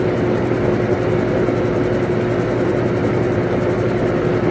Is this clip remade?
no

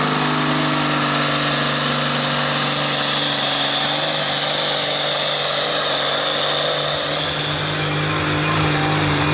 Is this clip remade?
no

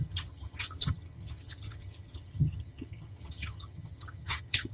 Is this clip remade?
yes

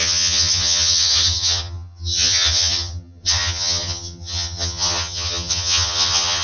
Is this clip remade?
yes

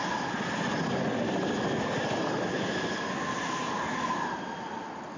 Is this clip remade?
no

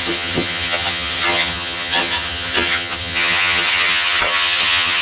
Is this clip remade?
yes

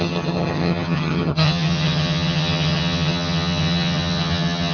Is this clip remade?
yes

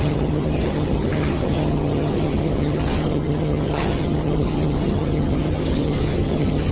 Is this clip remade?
yes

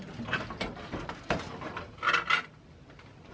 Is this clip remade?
no